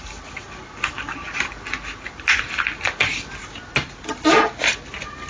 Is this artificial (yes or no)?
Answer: no